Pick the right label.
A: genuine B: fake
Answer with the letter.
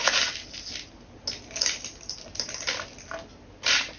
A